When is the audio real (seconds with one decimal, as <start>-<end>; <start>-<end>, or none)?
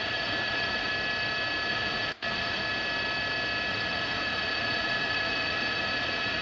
0.9-1.7; 2.6-3.7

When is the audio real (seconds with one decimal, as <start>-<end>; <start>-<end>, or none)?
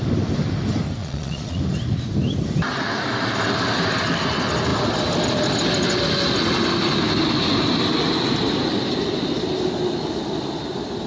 0.0-1.0; 1.6-11.1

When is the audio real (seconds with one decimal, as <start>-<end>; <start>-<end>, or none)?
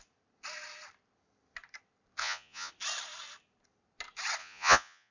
0.0-2.2; 2.7-4.4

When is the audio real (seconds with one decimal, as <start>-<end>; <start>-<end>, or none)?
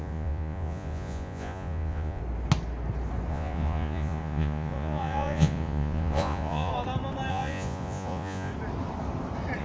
2.2-3.3; 6.7-7.3; 8.5-9.6